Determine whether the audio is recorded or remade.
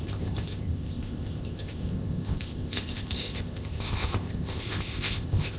remade